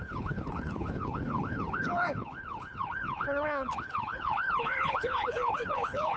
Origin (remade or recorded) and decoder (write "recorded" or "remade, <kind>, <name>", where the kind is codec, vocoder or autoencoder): remade, codec, HILCodec